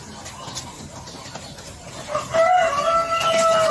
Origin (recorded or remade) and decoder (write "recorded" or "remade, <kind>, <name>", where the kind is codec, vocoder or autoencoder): recorded